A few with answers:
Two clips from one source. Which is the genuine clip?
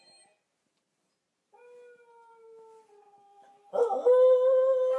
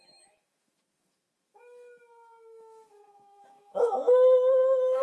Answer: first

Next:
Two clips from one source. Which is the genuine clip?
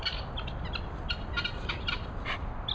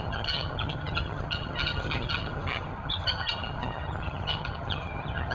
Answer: first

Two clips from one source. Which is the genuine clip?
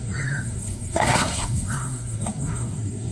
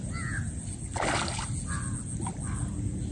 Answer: second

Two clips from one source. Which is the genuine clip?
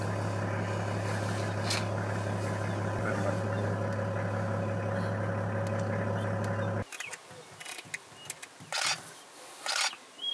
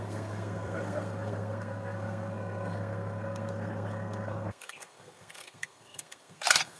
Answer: first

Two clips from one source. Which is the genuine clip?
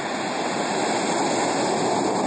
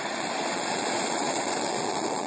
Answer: first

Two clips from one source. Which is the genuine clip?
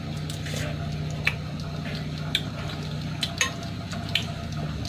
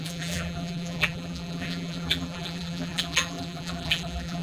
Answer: first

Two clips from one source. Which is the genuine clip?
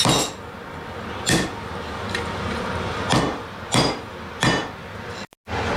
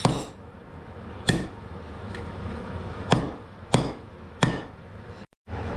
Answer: first